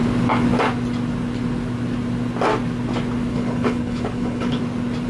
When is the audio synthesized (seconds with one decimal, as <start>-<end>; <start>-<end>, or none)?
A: 3.3-4.6